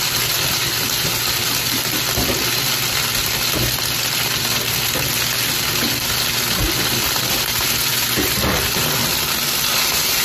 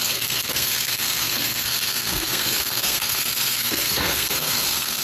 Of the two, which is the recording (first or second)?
first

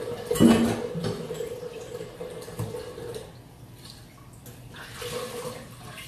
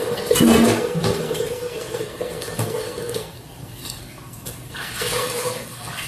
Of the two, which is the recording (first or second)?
first